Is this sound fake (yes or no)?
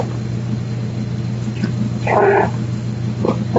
no